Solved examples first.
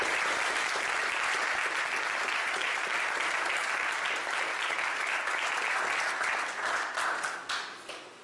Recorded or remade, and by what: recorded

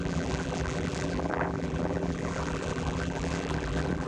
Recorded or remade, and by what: remade, vocoder, BigVGAN v2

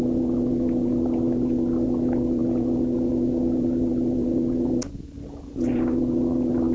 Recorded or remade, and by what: recorded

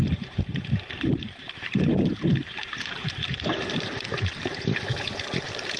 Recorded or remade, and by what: remade, vocoder, BigVGAN v2